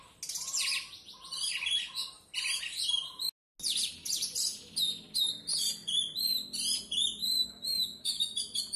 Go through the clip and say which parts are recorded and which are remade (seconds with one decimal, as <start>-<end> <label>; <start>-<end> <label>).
0.0-7.2 recorded; 7.2-8.2 remade; 8.2-8.8 recorded